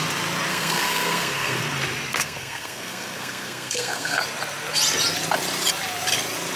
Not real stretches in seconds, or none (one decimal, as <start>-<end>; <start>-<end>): 0.5-1.6; 2.1-4.2